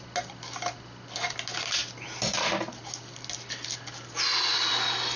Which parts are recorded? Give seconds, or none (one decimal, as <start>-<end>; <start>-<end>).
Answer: 0.0-5.2